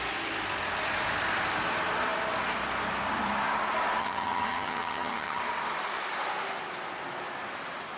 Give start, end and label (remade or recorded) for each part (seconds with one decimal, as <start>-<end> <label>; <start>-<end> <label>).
0.0-4.0 recorded; 4.0-5.4 remade; 5.4-8.0 recorded